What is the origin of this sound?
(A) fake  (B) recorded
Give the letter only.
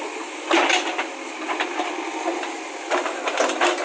B